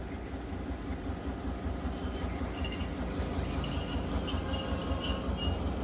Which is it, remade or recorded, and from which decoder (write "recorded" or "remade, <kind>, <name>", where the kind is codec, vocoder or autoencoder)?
recorded